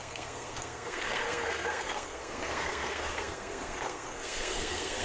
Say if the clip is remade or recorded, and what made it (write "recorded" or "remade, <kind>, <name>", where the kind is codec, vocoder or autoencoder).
remade, codec, SNAC